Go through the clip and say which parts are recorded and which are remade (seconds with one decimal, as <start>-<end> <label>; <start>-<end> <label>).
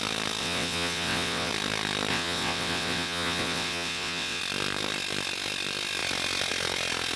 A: 0.0-0.4 recorded; 0.4-1.5 remade; 1.5-2.1 recorded; 2.1-4.4 remade; 4.4-7.2 recorded